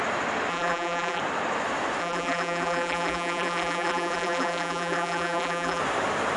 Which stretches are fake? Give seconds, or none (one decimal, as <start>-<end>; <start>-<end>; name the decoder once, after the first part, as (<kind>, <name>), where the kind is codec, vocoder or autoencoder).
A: 0.5-1.2 (vocoder, BigVGAN v2); 2.0-5.8